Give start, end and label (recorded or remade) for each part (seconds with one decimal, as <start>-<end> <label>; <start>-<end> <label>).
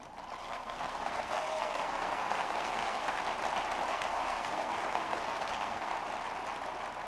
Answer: 0.0-0.4 recorded; 0.4-3.2 remade; 3.2-3.9 recorded; 3.9-5.9 remade; 5.9-7.1 recorded